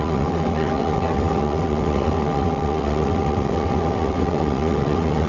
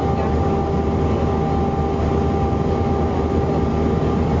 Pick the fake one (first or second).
first